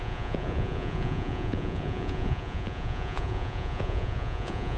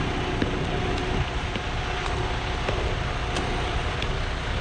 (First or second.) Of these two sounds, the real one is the second